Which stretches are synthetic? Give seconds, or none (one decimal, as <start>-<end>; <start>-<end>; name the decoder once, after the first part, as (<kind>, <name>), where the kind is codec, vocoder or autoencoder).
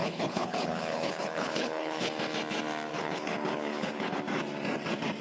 0.0-2.1 (codec, HILCodec); 2.9-4.1